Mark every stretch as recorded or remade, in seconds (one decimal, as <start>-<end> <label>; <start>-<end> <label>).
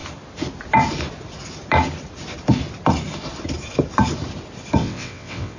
0.0-4.8 recorded; 4.8-5.6 remade